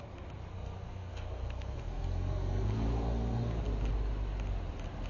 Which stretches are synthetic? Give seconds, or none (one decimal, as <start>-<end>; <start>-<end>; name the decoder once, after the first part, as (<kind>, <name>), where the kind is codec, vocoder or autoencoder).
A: 0.5-3.6 (codec, SNAC)